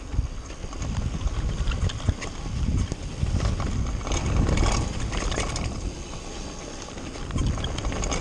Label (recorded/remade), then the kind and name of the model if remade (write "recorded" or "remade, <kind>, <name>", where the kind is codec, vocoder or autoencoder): recorded